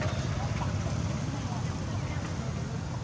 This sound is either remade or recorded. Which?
recorded